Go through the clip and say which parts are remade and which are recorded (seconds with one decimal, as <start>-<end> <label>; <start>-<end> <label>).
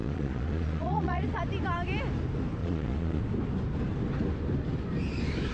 0.0-1.4 remade; 1.4-2.6 recorded; 2.6-3.2 remade; 3.2-5.5 recorded